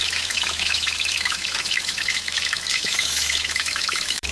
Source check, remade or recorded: remade